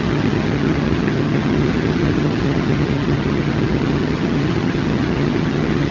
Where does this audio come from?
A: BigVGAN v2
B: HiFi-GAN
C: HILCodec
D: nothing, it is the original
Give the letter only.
B